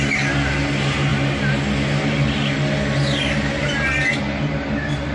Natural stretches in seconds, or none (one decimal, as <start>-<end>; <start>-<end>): 0.0-5.1